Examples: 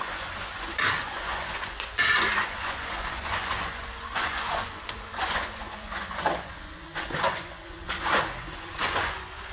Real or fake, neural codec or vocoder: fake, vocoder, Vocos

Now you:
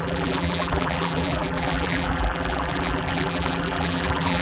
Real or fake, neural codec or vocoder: fake, vocoder, BigVGAN v2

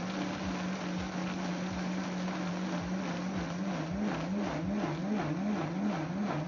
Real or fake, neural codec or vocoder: real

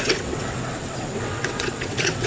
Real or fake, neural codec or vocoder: fake, vocoder, WaveNeXt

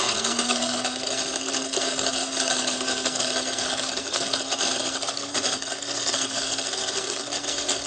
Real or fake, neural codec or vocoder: fake, codec, SNAC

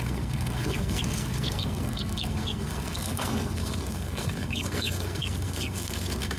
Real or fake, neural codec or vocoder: fake, codec, SNAC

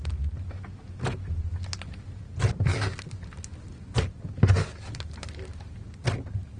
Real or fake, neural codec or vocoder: real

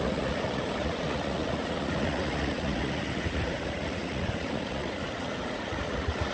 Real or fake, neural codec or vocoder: fake, vocoder, Vocos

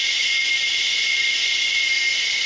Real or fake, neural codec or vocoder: real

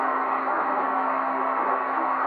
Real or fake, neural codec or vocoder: fake, codec, SNAC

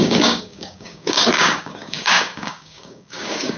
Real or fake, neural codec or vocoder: fake, codec, DAC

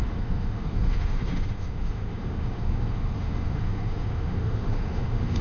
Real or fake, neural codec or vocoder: fake, autoencoder, DAC-VAE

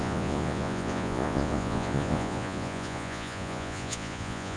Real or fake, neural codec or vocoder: fake, vocoder, Vocos